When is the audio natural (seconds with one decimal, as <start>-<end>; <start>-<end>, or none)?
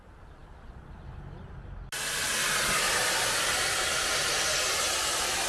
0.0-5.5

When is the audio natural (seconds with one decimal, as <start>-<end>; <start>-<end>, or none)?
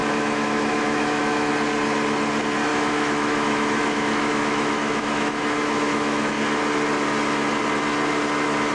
1.5-2.7; 6.3-8.7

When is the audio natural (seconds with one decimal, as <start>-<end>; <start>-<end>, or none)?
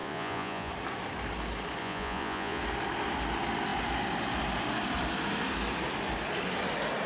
0.7-1.8; 2.6-7.1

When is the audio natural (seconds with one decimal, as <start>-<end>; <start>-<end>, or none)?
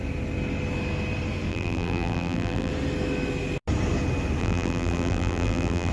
0.0-1.5; 2.7-4.4